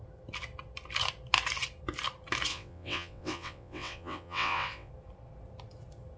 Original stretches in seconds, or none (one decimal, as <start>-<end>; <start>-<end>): 0.0-2.5; 4.9-6.2